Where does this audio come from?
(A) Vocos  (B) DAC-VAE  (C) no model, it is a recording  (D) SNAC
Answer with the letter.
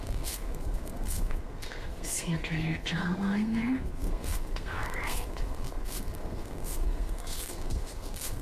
D